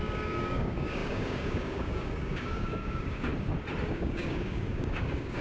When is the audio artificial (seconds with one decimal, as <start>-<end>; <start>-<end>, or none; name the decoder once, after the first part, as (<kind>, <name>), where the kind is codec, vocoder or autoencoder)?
0.0-3.3 (codec, DAC); 3.8-5.4